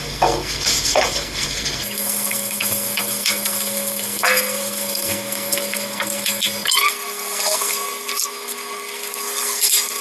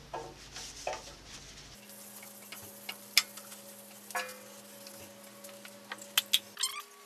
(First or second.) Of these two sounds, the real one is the second